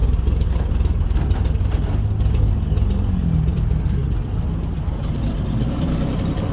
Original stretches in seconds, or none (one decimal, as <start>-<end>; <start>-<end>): 0.0-3.5; 4.0-5.1